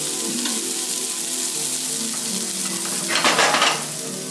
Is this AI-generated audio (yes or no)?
no